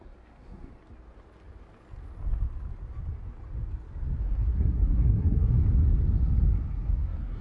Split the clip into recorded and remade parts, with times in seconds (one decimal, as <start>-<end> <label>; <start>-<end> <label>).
0.0-0.7 remade; 0.7-4.2 recorded; 4.2-5.6 remade; 5.6-6.9 recorded; 6.9-7.4 remade